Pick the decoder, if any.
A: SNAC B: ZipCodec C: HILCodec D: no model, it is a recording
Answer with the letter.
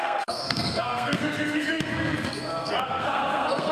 A